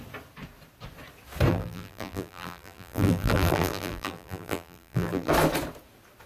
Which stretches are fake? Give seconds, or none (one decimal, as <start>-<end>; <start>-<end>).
1.5-5.3

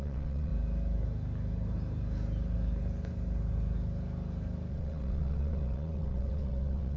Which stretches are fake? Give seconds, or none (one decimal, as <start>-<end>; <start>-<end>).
0.0-0.5; 4.7-7.0

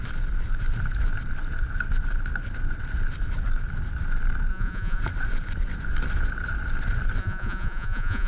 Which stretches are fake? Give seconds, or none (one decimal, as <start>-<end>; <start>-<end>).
4.5-5.0; 7.2-8.3

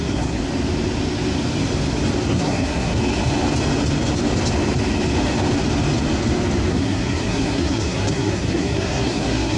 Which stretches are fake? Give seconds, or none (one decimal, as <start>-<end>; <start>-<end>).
0.0-0.4; 2.3-3.0; 6.7-9.6

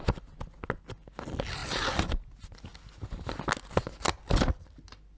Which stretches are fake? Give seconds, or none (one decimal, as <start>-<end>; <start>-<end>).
none

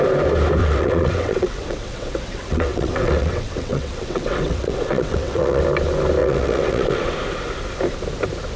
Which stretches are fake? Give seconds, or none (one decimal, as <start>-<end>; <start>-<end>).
0.6-5.6; 6.2-7.1

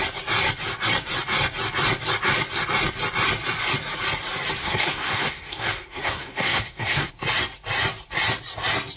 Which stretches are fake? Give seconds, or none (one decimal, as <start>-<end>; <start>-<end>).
4.6-7.1

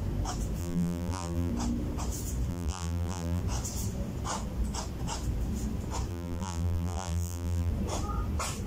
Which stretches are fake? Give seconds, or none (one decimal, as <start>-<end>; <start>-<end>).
0.6-1.5; 2.5-3.4; 6.1-7.7